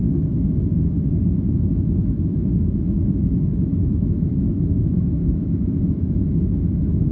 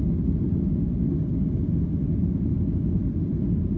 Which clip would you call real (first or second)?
second